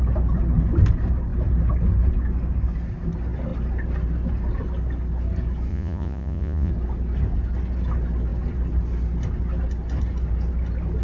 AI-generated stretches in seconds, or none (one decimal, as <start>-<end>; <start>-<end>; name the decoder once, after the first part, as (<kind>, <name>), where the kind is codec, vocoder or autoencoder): 5.7-6.7 (vocoder, Vocos)